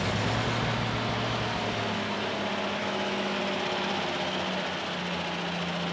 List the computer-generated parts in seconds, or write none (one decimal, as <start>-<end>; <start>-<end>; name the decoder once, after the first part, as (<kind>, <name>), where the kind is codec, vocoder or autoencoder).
2.8-3.4 (autoencoder, DAC-VAE)